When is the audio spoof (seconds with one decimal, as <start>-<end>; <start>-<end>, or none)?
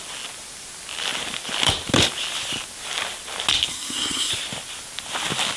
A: 3.7-4.3